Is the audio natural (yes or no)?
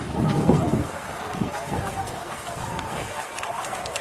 no